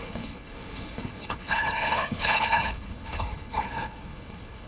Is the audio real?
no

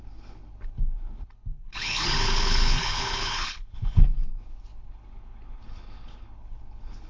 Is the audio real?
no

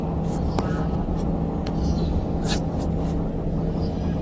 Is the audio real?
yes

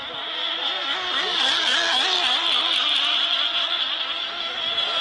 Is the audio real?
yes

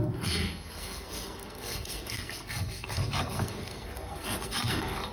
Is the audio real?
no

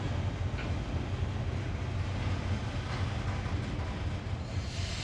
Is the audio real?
yes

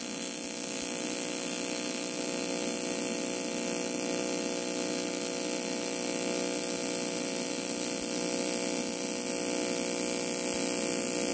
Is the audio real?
yes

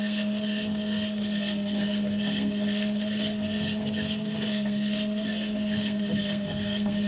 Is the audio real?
no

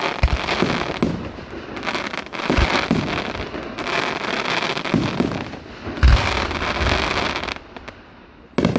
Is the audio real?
yes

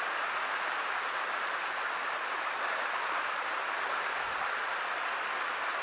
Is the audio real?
yes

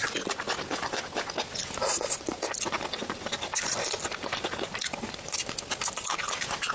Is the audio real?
yes